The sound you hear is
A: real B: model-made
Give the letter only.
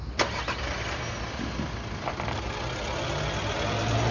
A